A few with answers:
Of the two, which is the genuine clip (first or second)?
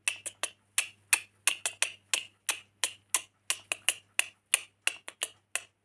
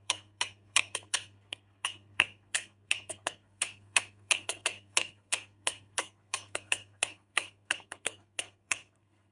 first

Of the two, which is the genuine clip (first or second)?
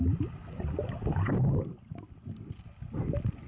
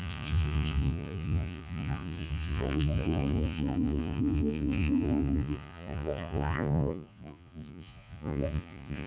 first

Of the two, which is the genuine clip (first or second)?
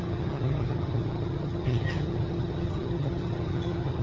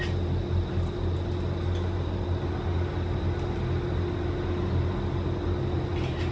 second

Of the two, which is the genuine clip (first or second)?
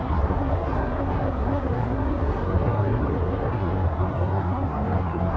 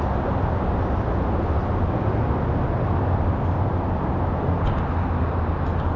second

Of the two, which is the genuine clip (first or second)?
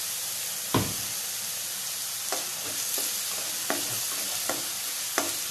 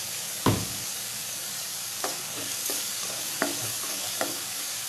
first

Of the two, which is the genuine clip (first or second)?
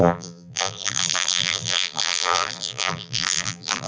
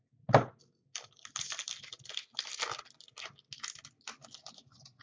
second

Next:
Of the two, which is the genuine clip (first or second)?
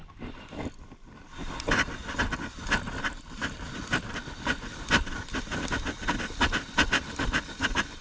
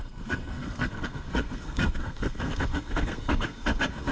first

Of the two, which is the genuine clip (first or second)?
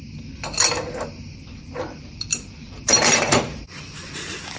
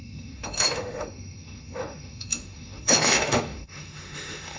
first